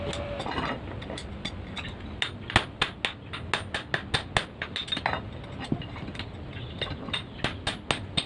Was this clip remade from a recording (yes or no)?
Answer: no